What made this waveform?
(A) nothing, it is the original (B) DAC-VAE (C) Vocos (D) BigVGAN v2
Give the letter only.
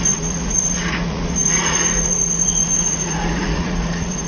C